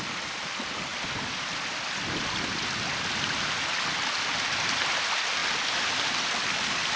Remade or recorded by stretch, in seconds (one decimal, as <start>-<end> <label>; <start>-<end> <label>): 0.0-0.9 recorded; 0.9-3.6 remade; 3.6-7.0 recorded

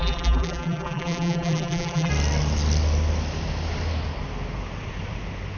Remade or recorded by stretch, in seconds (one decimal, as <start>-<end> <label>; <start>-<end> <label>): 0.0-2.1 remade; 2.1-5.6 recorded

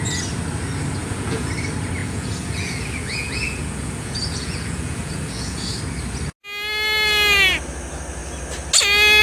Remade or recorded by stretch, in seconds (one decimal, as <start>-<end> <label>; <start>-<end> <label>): 0.0-1.0 recorded; 1.0-1.5 remade; 1.5-2.0 recorded; 2.0-5.8 remade; 5.8-9.2 recorded

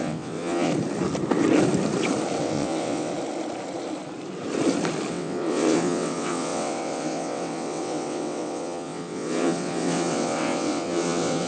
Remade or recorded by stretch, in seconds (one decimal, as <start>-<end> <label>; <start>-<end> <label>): 0.0-0.7 remade; 0.7-2.4 recorded; 2.4-3.1 remade; 3.1-5.1 recorded; 5.1-11.5 remade